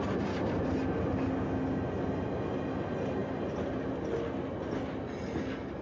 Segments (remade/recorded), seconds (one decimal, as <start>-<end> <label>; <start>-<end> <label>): 0.0-5.8 recorded